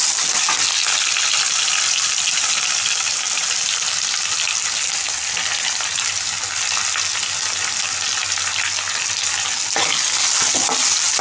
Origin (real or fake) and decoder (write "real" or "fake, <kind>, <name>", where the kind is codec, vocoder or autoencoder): real